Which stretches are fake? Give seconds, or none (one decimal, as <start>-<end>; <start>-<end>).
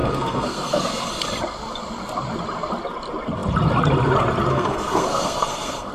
0.0-1.1; 4.5-5.9